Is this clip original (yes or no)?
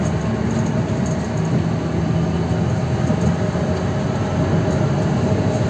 yes